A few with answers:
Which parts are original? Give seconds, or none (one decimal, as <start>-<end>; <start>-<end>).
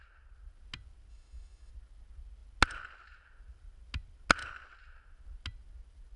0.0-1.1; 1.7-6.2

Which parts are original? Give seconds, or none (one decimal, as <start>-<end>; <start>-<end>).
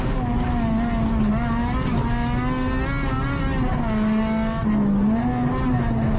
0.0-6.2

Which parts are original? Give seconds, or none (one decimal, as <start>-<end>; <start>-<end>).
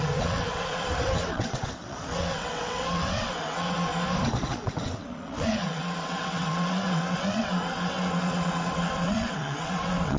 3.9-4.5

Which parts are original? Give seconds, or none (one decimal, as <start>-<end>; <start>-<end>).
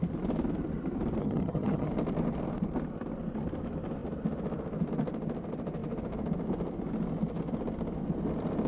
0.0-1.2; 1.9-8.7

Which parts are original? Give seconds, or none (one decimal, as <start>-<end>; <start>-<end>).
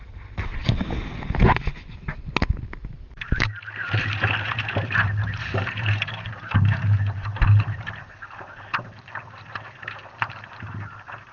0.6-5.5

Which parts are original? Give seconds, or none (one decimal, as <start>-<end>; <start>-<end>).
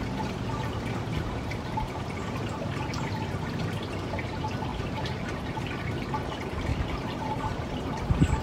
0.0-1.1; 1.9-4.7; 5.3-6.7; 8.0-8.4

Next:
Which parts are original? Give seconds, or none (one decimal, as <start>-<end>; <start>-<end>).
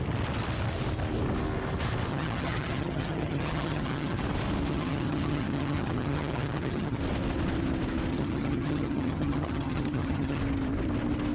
0.0-2.1; 4.2-4.7; 7.0-8.1; 10.4-11.3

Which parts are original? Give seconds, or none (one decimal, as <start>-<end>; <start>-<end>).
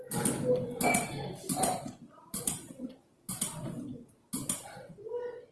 0.0-1.1; 4.2-5.5